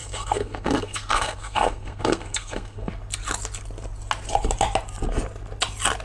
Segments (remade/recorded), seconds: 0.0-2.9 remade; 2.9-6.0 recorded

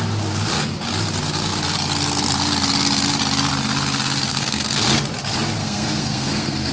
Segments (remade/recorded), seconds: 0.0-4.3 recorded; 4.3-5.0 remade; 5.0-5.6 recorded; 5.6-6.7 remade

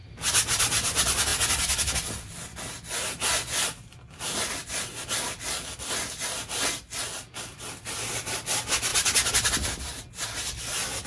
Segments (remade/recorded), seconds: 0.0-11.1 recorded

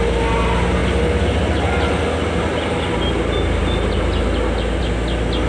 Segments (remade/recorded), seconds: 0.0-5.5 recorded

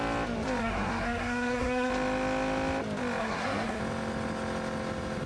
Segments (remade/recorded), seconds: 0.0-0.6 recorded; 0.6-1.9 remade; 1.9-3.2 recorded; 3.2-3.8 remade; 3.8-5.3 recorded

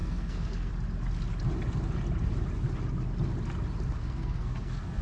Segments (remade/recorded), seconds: 0.0-0.7 remade; 0.7-4.0 recorded; 4.0-5.0 remade